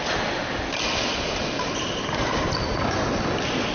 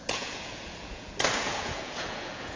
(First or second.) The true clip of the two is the first